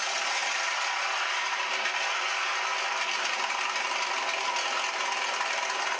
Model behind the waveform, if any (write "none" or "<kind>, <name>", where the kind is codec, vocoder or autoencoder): none